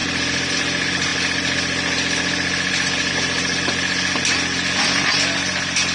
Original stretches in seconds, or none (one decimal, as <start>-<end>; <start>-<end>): 0.0-5.9